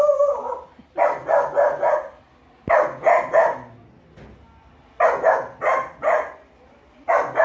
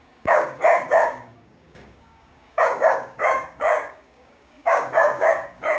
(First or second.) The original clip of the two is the first